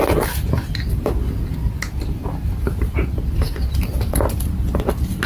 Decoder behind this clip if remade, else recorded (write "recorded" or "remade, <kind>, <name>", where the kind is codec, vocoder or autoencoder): recorded